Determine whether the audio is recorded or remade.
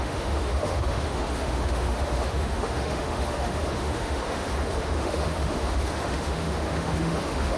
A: remade